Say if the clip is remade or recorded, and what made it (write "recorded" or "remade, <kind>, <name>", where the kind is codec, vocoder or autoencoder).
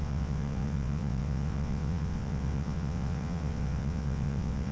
remade, vocoder, WaveNeXt